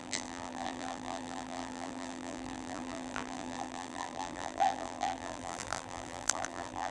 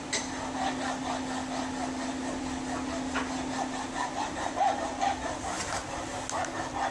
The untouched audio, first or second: second